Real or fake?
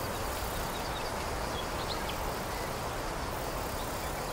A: real